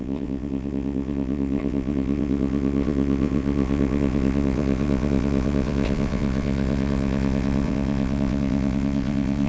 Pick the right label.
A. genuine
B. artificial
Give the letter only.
B